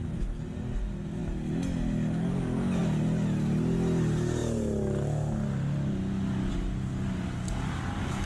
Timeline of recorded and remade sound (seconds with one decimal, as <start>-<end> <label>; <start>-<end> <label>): 0.0-8.3 recorded